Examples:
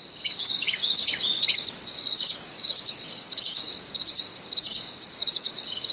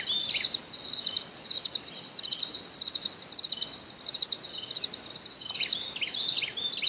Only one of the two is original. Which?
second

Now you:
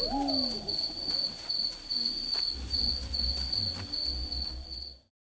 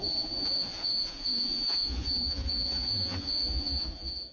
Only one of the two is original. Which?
first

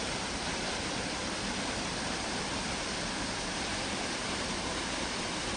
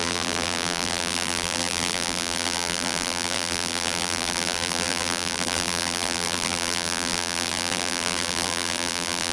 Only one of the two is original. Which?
first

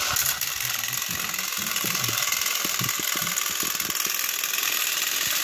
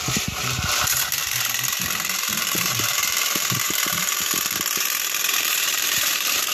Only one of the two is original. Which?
first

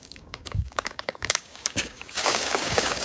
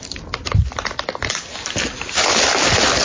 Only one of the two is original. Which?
second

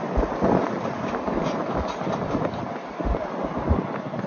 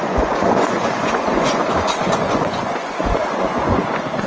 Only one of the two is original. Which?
first